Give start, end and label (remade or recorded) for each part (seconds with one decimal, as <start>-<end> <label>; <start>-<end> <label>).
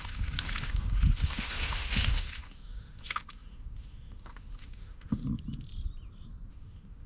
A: 0.0-5.2 remade; 5.2-6.5 recorded; 6.5-7.1 remade